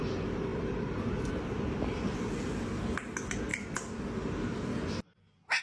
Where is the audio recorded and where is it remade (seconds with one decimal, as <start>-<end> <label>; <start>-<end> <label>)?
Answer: 0.0-0.5 recorded; 0.5-1.3 remade; 1.3-3.5 recorded; 3.5-4.0 remade; 4.0-5.6 recorded